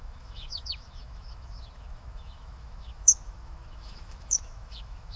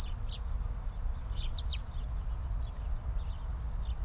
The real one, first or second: second